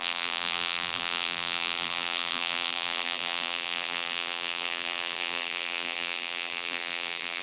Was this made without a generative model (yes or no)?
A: no